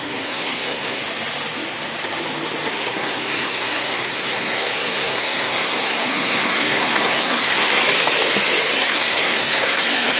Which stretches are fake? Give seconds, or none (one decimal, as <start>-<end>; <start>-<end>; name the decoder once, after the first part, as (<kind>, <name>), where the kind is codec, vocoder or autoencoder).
0.0-1.0 (codec, SNAC); 2.7-7.8; 8.7-10.2